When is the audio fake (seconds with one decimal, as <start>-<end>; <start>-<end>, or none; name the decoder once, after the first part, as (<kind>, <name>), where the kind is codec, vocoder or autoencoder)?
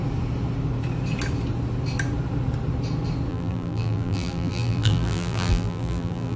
3.3-6.4 (vocoder, BigVGAN v2)